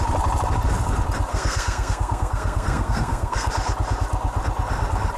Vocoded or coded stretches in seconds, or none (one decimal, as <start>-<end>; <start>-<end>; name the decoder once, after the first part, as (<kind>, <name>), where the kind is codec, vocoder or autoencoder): 1.3-3.5 (codec, SNAC)